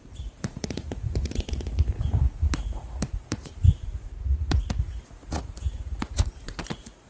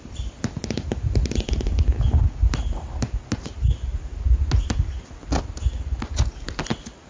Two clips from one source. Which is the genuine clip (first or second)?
second